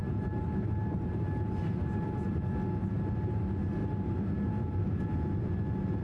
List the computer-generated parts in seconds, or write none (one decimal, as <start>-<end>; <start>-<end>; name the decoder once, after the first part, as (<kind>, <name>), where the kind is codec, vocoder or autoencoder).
0.0-2.3 (vocoder, BigVGAN v2); 2.8-3.4; 3.8-5.0